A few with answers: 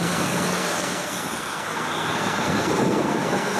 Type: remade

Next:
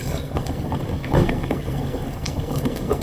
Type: remade